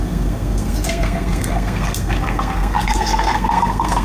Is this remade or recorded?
remade